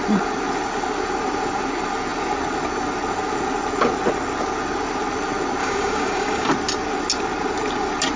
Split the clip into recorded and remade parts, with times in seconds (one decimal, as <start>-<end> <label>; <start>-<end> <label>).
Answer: 0.0-5.6 recorded; 5.6-6.5 remade; 6.5-8.2 recorded